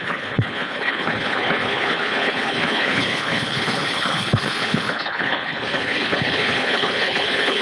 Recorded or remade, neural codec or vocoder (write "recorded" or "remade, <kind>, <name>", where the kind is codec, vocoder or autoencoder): remade, codec, HILCodec